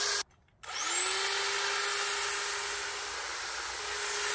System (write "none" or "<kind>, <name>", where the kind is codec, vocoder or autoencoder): none